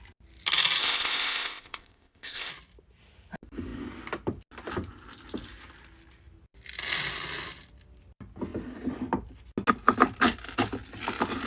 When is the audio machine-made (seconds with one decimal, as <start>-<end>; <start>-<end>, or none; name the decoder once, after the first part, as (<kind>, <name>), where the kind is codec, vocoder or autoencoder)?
0.8-2.5 (codec, ZipCodec)